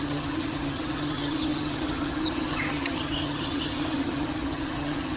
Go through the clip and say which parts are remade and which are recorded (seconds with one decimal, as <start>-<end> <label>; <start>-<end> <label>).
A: 0.0-5.2 remade